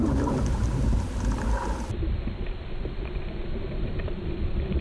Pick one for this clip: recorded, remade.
remade